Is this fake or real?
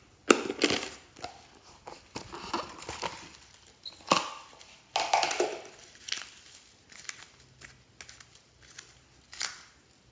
real